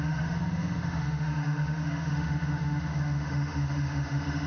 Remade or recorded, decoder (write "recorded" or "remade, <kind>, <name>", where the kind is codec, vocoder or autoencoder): remade, autoencoder, DAC-VAE